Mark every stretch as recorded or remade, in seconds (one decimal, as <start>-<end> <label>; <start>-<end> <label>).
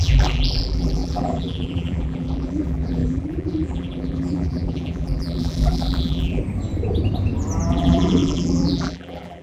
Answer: 0.0-6.4 remade; 6.4-7.7 recorded; 7.7-9.4 remade